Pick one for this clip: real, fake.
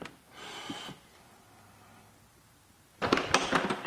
real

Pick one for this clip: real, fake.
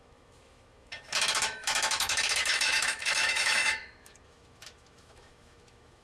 fake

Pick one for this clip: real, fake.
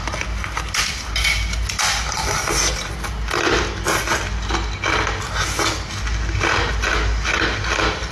real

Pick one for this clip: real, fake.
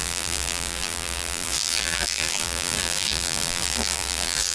fake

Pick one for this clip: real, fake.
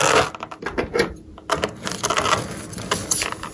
real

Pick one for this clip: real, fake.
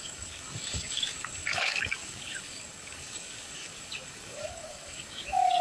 fake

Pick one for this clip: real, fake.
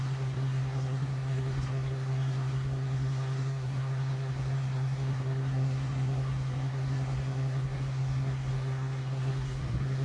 fake